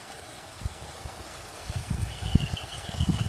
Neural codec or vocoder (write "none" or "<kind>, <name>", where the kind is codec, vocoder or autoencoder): codec, SNAC